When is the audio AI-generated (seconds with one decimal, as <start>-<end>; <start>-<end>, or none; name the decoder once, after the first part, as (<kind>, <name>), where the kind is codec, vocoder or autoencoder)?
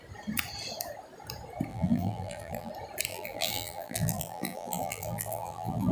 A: 1.7-2.7 (vocoder, BigVGAN v2); 3.1-5.9